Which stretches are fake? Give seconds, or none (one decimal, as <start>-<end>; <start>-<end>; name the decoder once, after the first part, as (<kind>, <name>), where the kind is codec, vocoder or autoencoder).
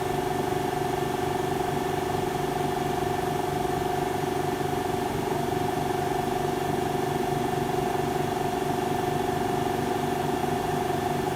4.7-5.8 (vocoder, BigVGAN v2); 10.4-11.4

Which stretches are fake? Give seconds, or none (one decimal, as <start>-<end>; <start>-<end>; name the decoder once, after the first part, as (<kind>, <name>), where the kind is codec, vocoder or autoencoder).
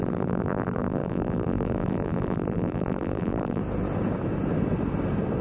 0.0-3.6 (vocoder, BigVGAN v2)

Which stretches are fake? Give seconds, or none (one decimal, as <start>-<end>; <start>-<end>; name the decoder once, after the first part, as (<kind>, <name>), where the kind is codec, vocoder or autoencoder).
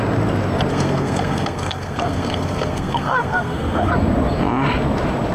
0.7-3.9 (codec, SNAC)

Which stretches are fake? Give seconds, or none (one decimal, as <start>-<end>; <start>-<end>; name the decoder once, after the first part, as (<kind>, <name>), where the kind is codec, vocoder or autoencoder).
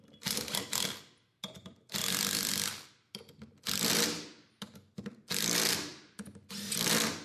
2.0-2.5 (vocoder, BigVGAN v2)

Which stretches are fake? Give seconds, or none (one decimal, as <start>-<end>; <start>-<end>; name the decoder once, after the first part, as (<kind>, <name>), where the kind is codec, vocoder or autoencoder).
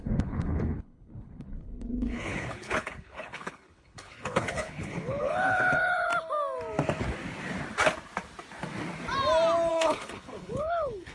0.0-6.1 (codec, HILCodec); 9.7-11.1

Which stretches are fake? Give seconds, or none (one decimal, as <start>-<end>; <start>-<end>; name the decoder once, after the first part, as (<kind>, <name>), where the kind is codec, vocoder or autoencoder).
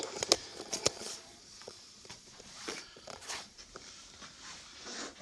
0.5-3.6 (vocoder, Vocos)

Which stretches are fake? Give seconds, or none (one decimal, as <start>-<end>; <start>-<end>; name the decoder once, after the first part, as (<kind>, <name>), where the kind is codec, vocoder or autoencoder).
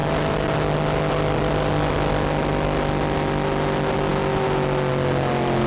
none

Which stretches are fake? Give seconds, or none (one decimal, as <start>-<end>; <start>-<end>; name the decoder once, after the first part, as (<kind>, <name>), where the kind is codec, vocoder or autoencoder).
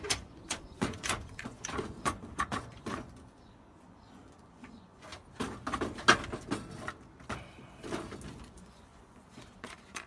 0.0-5.1 (vocoder, Vocos); 8.3-10.1